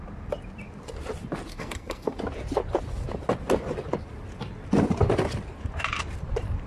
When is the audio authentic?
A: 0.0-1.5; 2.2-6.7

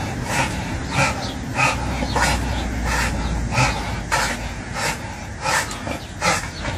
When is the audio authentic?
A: 0.0-6.8

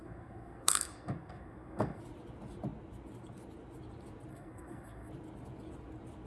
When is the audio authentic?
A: 2.0-4.3; 5.1-6.3

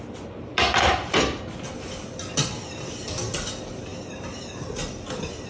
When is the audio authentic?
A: 0.0-5.5

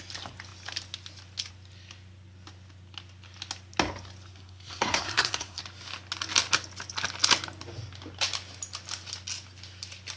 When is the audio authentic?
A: 0.0-4.3; 5.6-10.2